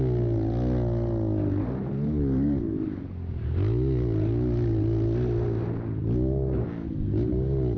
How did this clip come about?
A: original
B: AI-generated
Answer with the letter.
A